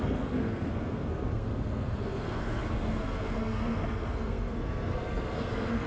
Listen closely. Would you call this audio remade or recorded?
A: remade